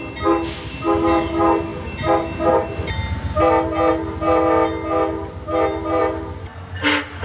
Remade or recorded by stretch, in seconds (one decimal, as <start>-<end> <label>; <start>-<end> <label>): 0.0-7.2 recorded